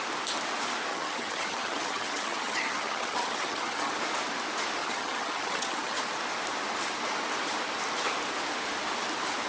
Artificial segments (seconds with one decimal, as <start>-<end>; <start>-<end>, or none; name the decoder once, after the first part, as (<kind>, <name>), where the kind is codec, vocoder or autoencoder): 0.9-3.9 (vocoder, HiFi-GAN); 4.8-6.0